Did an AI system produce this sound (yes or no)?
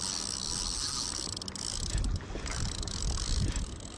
no